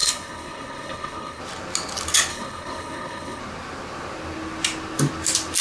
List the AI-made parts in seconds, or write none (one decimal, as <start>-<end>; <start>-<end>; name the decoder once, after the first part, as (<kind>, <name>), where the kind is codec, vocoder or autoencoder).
0.0-1.4 (codec, HILCodec); 2.3-3.4